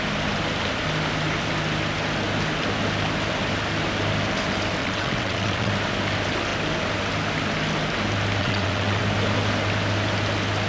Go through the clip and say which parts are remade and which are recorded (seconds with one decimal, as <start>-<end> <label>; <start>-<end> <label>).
0.0-4.8 recorded; 4.8-5.7 remade; 5.7-8.4 recorded; 8.4-9.0 remade; 9.0-10.7 recorded